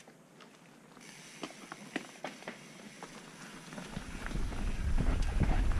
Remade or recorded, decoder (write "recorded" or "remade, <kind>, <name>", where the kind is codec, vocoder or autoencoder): recorded